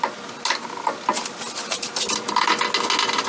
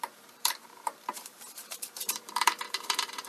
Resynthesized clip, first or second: second